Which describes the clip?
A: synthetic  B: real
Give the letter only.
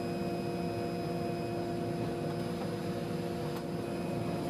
B